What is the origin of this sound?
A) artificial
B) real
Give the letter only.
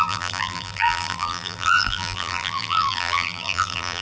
A